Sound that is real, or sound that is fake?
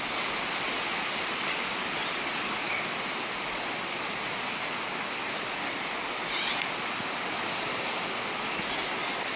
real